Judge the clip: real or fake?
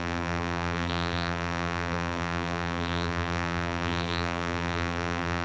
fake